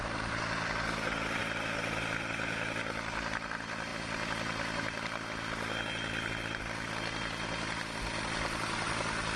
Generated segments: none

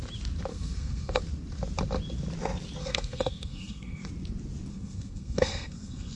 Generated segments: 0.5-1.2 (codec, SNAC); 2.8-4.1; 4.7-6.2